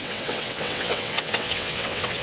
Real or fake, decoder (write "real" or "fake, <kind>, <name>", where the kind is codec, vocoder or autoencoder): fake, vocoder, WaveNeXt